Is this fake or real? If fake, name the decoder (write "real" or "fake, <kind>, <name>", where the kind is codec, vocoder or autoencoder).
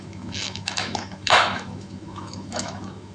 fake, autoencoder, DAC-VAE